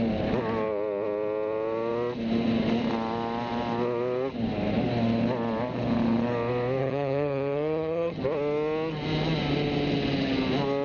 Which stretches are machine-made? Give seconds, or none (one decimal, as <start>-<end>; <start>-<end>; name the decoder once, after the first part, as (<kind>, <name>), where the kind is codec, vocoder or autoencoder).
6.8-8.2 (vocoder, HiFi-GAN)